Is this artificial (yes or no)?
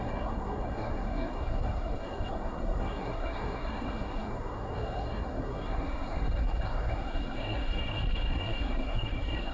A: yes